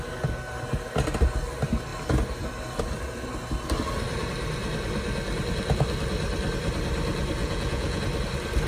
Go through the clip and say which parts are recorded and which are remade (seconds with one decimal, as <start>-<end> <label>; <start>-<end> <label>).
0.0-7.4 recorded; 7.4-8.0 remade; 8.0-8.7 recorded

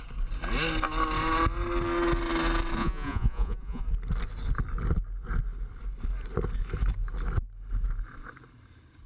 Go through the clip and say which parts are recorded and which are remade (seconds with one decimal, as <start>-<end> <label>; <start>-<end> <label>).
0.0-2.8 recorded; 2.8-3.8 remade; 3.8-9.1 recorded

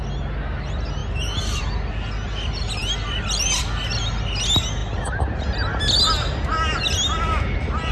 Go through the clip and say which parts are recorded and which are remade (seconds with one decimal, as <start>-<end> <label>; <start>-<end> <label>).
0.0-7.9 recorded

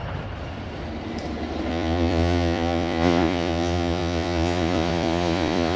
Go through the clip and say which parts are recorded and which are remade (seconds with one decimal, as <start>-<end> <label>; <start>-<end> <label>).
0.0-1.7 recorded; 1.7-5.8 remade

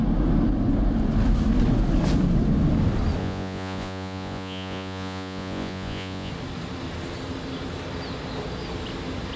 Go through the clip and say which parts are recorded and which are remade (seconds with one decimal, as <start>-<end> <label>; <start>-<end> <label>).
0.0-3.2 recorded; 3.2-6.3 remade; 6.3-9.4 recorded